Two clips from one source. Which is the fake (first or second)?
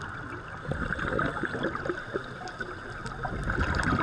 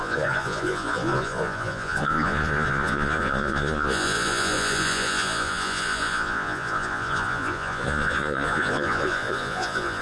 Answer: second